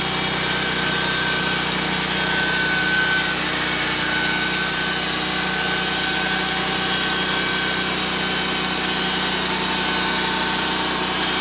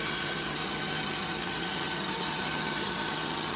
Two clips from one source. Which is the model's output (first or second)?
second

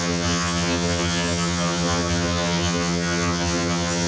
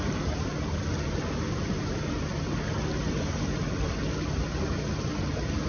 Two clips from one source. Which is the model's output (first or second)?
first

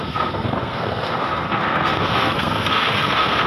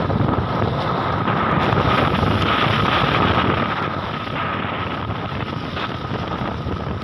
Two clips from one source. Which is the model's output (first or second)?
first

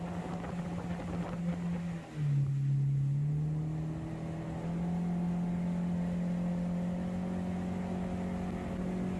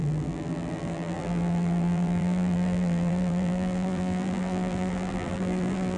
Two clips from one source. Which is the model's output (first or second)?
second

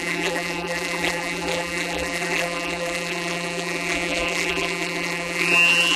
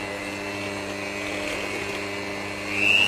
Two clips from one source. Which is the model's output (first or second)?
first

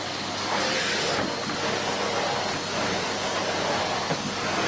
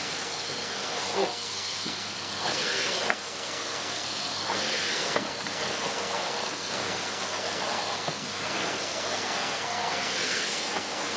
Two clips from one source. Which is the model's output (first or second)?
second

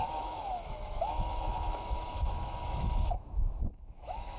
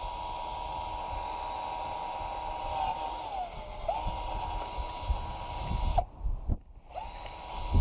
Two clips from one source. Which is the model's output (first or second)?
first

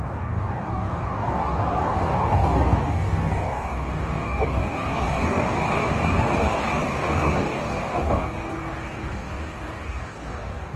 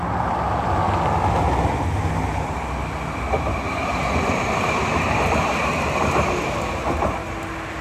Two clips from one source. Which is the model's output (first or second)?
first